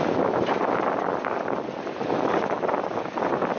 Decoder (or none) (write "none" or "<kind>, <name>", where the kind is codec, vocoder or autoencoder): none